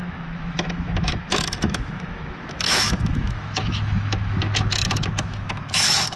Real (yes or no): no